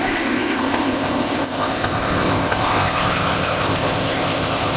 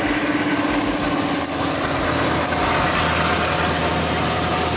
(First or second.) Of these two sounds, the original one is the second